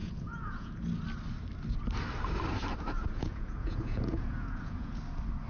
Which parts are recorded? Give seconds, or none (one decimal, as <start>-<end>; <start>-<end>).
0.8-3.0; 5.0-5.5